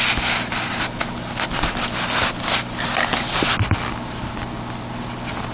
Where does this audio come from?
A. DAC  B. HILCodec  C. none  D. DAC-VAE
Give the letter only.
C